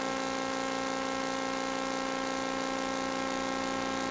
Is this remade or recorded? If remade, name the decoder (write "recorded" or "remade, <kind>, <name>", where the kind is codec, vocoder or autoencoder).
recorded